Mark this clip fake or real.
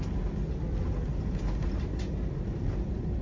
real